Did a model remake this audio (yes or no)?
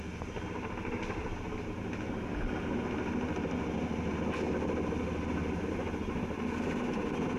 no